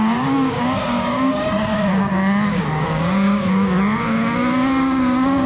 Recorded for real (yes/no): no